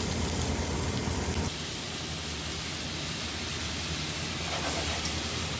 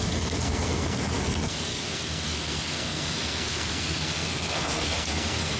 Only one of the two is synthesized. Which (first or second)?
second